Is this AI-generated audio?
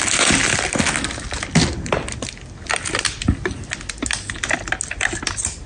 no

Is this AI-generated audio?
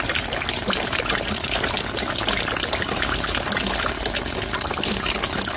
no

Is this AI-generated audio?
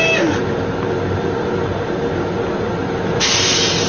no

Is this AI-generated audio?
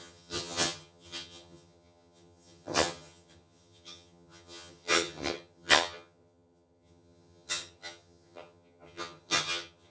yes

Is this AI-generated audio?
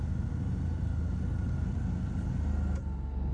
no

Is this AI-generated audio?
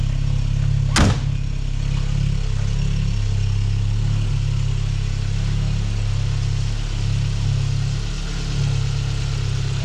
no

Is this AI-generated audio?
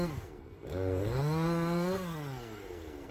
yes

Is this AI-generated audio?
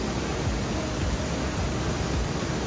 no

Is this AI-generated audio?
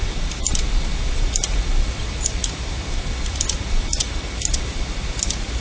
no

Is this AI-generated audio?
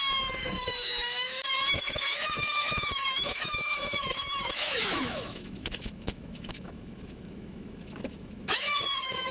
yes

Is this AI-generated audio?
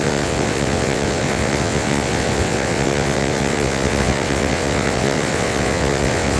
yes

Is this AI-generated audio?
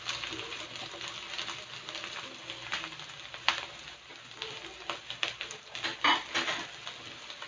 no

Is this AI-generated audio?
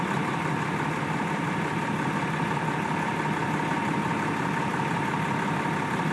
no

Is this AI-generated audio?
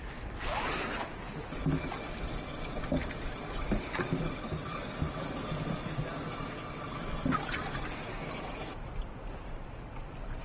no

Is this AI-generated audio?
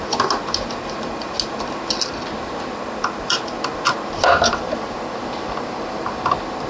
no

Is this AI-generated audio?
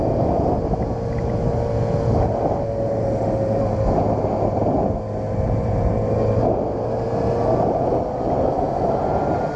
no